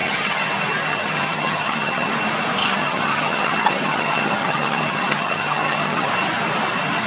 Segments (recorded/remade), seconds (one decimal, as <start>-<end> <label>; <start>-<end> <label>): 0.0-0.5 remade; 0.5-0.9 recorded; 0.9-2.1 remade; 2.1-2.6 recorded; 2.6-6.1 remade; 6.1-7.1 recorded